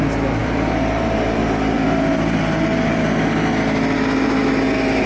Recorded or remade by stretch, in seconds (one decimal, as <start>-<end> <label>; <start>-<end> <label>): 0.0-0.4 recorded; 0.4-3.1 remade; 3.1-5.1 recorded